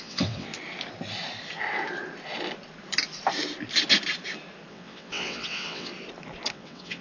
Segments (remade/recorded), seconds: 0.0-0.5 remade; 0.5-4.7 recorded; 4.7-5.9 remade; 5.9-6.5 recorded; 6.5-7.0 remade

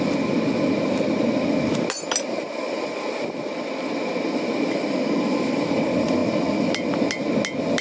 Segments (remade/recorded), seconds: 0.0-7.8 recorded

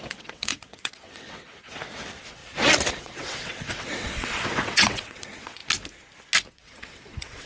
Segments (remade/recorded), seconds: 0.0-2.4 remade; 2.4-3.0 recorded; 3.0-5.6 remade; 5.6-6.5 recorded; 6.5-7.5 remade

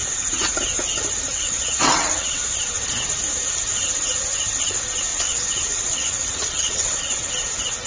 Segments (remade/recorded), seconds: 0.0-1.3 recorded; 1.3-2.4 remade; 2.4-5.1 recorded; 5.1-7.3 remade; 7.3-7.9 recorded